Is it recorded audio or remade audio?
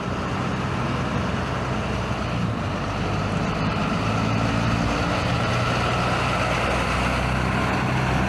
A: recorded